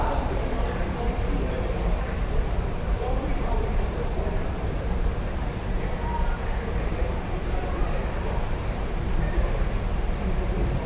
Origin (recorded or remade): remade